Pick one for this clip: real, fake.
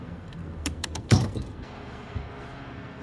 fake